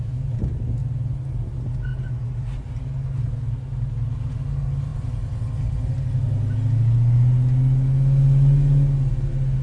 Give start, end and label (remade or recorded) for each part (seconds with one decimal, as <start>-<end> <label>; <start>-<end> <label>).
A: 0.0-9.6 recorded